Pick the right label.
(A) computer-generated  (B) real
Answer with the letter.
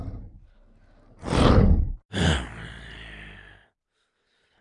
B